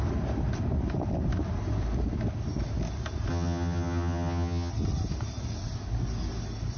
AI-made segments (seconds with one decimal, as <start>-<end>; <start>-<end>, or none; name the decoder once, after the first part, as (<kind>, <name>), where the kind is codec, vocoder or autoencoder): 3.3-4.7 (vocoder, HiFi-GAN)